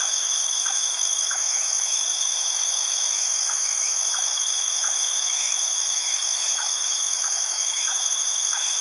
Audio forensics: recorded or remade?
remade